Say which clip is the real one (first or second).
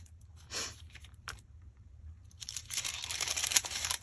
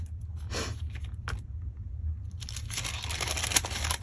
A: second